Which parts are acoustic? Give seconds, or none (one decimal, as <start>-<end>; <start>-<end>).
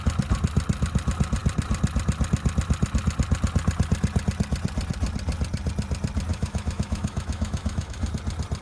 0.0-6.3; 8.1-8.6